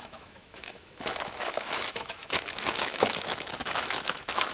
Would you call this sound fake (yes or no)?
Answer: yes